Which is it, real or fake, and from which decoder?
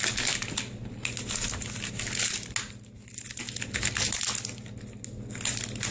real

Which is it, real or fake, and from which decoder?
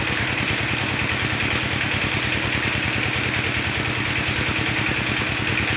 real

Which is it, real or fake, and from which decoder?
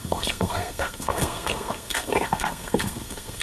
fake, codec, SNAC